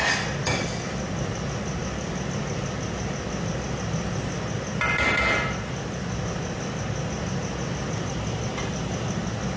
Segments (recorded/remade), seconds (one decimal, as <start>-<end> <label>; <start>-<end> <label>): 0.0-9.6 recorded